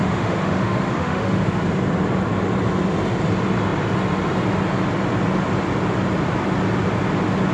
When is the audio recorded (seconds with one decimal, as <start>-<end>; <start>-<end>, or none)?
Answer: 1.6-7.5